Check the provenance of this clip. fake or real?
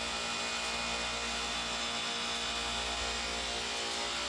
real